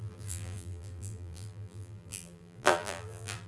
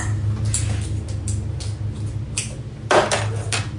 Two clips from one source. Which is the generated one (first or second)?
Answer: first